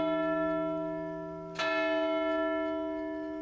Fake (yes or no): no